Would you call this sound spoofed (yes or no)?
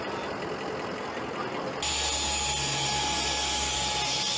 no